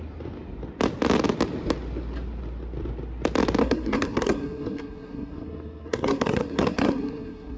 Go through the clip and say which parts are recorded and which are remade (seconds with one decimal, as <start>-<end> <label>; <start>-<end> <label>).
0.0-3.6 recorded; 3.6-7.6 remade